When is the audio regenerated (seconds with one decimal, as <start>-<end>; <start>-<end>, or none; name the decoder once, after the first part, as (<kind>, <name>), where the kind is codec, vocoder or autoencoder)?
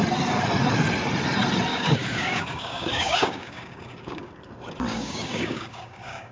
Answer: 1.7-4.3 (codec, DAC); 4.9-6.3